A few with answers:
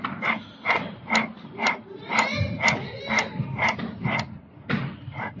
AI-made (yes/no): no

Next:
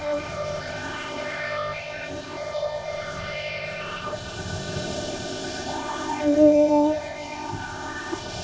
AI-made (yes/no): yes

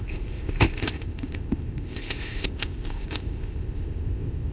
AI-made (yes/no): yes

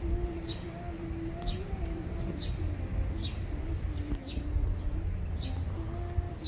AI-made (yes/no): no